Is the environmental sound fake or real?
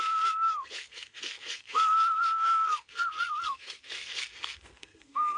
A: fake